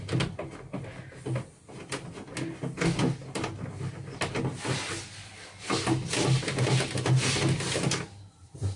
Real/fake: real